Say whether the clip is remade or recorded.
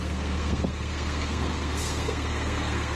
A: remade